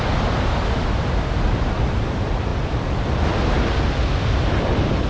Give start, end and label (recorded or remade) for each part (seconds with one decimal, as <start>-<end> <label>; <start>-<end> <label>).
0.0-5.1 remade